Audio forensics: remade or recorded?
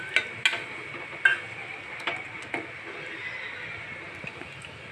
recorded